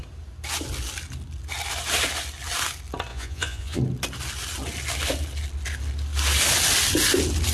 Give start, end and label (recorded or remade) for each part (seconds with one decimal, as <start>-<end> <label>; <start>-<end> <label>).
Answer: 0.0-3.1 recorded; 3.1-3.8 remade; 3.8-7.5 recorded